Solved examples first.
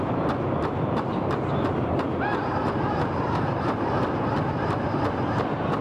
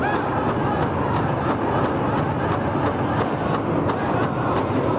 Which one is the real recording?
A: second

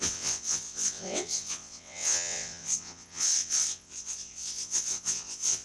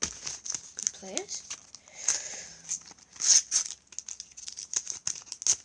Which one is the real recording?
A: second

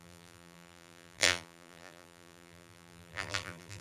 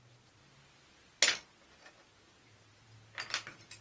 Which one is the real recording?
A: second